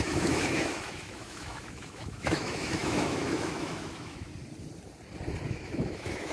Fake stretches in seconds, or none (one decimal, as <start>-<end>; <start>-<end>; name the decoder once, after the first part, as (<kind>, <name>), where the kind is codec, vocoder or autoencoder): 0.0-4.3 (autoencoder, DAC-VAE); 5.5-6.3